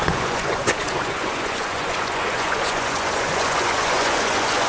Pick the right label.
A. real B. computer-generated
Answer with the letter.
B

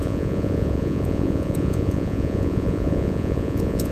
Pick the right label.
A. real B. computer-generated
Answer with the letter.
B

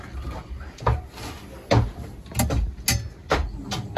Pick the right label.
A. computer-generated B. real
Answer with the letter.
B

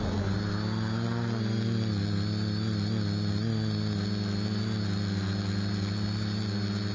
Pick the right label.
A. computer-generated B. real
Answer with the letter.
B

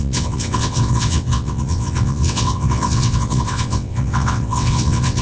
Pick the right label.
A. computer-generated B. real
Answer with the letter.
A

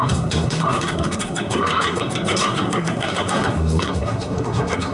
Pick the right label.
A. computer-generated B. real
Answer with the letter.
A